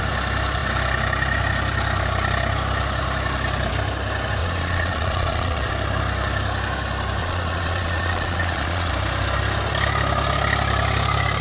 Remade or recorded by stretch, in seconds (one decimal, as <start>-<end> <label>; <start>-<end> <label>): 0.0-4.4 recorded; 4.4-5.7 remade; 5.7-7.2 recorded; 7.2-8.9 remade; 8.9-11.4 recorded